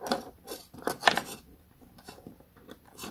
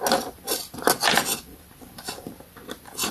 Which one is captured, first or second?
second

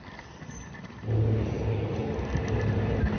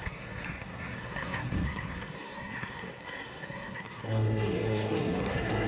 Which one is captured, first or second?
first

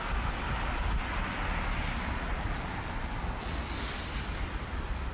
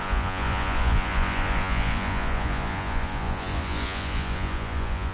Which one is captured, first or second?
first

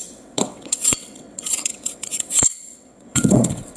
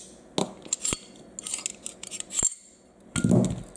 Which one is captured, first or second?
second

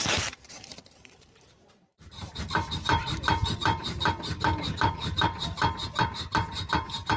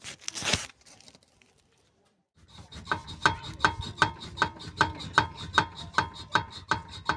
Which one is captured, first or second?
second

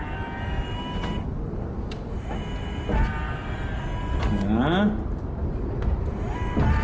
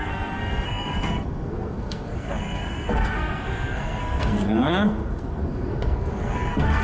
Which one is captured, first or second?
first